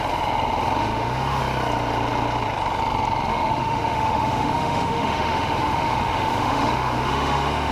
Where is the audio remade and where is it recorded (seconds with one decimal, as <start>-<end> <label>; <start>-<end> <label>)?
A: 0.0-0.8 recorded; 0.8-1.4 remade; 1.4-3.3 recorded; 3.3-7.7 remade